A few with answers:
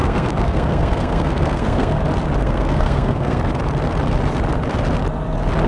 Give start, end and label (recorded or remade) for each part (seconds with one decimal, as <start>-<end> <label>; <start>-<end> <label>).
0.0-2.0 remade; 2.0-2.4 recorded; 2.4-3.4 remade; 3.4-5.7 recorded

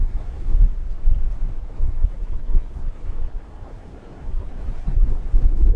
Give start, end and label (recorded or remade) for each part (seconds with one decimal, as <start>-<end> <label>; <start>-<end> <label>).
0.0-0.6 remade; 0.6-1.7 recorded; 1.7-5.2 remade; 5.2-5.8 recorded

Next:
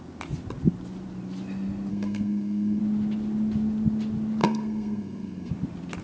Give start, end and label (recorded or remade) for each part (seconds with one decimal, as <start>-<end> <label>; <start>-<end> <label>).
0.0-1.9 recorded; 1.9-2.8 remade; 2.8-4.4 recorded; 4.4-5.5 remade; 5.5-6.0 recorded

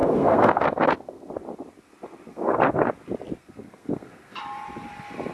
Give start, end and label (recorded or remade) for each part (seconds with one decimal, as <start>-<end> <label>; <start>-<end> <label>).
0.0-1.3 remade; 1.3-2.3 recorded; 2.3-2.9 remade; 2.9-3.4 recorded; 3.4-4.4 remade; 4.4-5.3 recorded

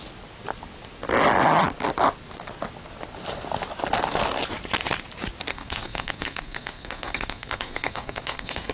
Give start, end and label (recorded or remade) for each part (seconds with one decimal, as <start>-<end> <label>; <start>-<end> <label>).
0.0-5.5 recorded; 5.5-8.7 remade

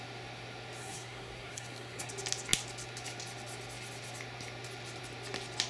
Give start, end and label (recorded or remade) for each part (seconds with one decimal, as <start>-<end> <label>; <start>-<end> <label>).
0.0-0.8 recorded; 0.8-2.1 remade; 2.1-5.7 recorded